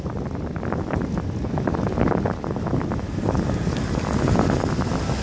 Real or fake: real